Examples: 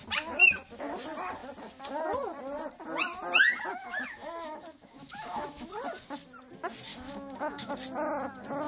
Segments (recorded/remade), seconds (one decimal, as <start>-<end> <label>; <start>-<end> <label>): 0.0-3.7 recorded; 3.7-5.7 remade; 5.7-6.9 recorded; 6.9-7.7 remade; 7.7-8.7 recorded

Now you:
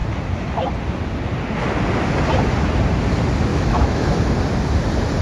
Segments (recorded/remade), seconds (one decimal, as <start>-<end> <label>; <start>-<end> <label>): 0.0-3.5 recorded; 3.5-4.1 remade; 4.1-5.2 recorded

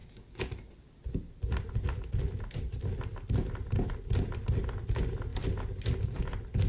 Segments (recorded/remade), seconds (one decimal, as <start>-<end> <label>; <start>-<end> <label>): 0.0-6.7 recorded

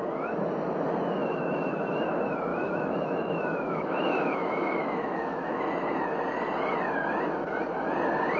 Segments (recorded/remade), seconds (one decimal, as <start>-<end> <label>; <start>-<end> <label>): 0.0-1.2 recorded; 1.2-2.0 remade; 2.0-2.5 recorded; 2.5-5.6 remade; 5.6-8.4 recorded

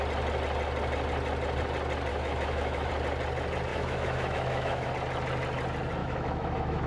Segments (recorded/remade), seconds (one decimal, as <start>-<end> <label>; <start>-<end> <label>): 0.0-2.1 recorded; 2.1-2.9 remade; 2.9-3.7 recorded; 3.7-4.9 remade; 4.9-6.0 recorded; 6.0-6.9 remade